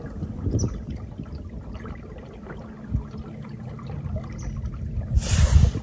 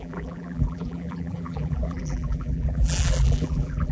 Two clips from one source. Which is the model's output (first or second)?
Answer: second